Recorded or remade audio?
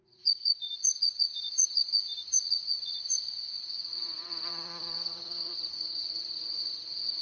remade